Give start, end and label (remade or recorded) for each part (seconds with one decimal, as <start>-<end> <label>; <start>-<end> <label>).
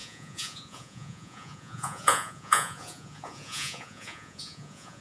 0.0-5.0 remade